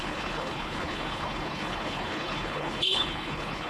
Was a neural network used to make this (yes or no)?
yes